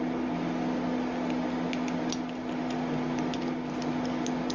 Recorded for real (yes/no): yes